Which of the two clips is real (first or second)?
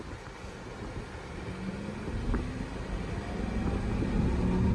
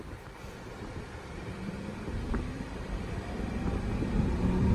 first